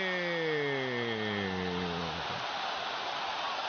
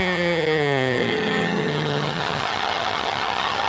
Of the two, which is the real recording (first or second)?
first